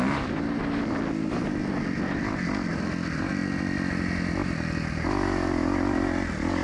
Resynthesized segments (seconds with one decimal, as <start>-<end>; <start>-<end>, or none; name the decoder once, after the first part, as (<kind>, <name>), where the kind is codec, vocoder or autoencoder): none